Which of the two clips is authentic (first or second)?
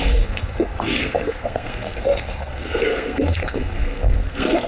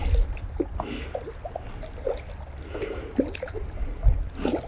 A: second